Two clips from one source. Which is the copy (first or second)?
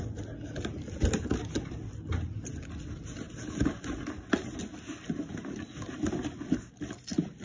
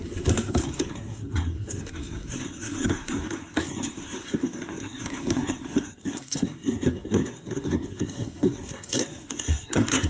second